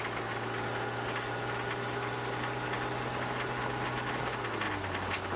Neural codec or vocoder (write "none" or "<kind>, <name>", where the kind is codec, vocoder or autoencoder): none